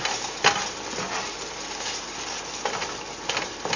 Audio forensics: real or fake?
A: real